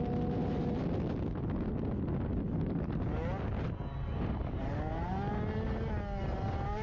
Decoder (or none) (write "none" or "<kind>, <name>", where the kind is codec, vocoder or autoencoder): none